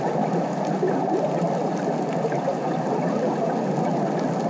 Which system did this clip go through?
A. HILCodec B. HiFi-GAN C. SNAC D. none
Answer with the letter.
D